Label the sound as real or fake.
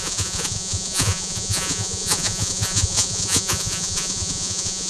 fake